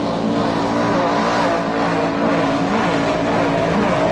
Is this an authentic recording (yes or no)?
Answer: yes